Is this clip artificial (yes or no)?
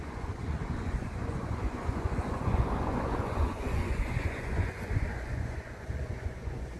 yes